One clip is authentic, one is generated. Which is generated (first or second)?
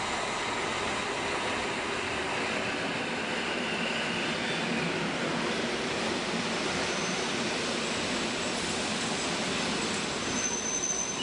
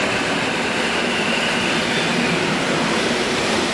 second